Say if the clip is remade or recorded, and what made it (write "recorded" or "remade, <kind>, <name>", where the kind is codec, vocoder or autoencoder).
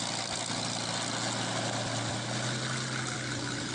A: recorded